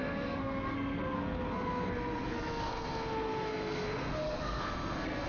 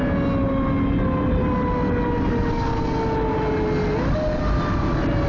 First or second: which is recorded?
second